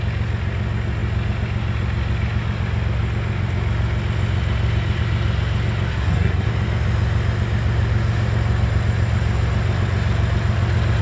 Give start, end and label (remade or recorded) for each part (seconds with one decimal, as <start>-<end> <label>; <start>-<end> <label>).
0.0-5.9 recorded; 5.9-6.5 remade; 6.5-11.0 recorded

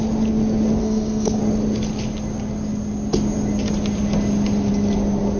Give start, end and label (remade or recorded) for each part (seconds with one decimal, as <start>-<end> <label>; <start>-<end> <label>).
0.0-0.8 recorded; 0.8-1.4 remade; 1.4-5.4 recorded

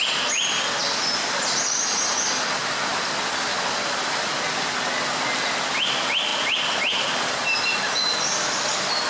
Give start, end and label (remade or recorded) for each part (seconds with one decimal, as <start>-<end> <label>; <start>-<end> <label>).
0.0-9.1 recorded

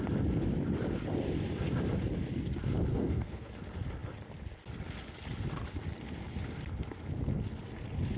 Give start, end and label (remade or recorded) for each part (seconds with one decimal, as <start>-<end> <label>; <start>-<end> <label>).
0.0-2.9 recorded; 2.9-3.5 remade; 3.5-8.2 recorded

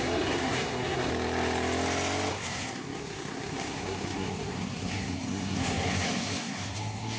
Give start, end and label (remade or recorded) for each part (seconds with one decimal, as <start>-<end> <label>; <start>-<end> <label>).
0.0-1.1 remade; 1.1-2.3 recorded; 2.3-7.2 remade